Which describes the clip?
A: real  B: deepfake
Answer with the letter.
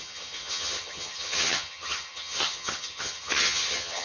B